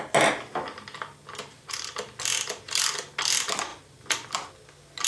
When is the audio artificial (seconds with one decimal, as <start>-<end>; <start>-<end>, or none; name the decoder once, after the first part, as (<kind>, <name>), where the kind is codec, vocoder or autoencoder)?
none